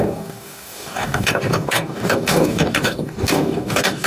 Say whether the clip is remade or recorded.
remade